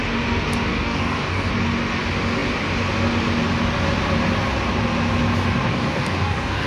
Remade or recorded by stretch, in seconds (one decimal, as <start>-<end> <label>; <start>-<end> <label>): 0.0-0.7 recorded; 0.7-1.5 remade; 1.5-5.7 recorded; 5.7-6.7 remade